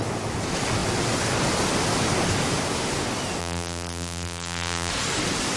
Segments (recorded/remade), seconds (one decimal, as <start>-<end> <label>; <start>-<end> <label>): 0.0-3.4 recorded; 3.4-4.9 remade; 4.9-5.6 recorded